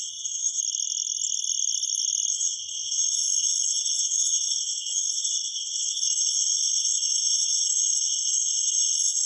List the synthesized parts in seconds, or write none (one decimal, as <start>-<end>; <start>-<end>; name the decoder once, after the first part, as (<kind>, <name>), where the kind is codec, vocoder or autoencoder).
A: 0.0-0.6 (codec, SNAC); 2.3-9.3